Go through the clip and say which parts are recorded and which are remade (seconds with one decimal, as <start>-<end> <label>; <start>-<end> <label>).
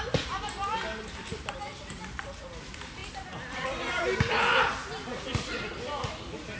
0.0-6.6 recorded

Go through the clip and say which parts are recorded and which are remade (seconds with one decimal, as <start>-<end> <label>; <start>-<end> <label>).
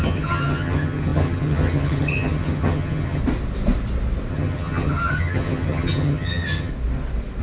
0.0-3.2 remade; 3.2-4.3 recorded; 4.3-6.7 remade; 6.7-7.4 recorded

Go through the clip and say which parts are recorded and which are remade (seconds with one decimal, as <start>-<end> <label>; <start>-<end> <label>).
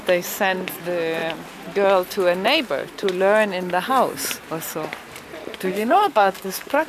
0.0-5.7 recorded; 5.7-6.9 remade